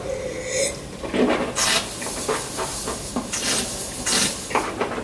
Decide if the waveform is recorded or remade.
recorded